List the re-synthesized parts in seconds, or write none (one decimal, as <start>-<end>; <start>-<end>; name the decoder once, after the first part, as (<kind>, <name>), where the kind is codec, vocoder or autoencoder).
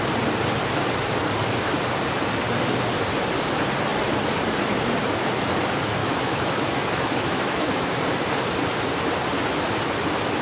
6.0-8.0 (autoencoder, DAC-VAE)